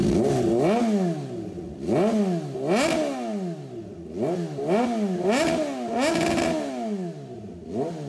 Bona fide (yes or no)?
yes